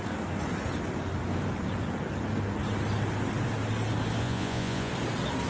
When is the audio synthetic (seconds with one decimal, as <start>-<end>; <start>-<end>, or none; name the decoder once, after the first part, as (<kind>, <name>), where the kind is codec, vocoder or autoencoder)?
4.2-4.9 (vocoder, Vocos)